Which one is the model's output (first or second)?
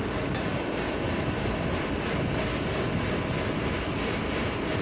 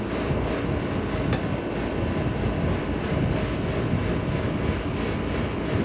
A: first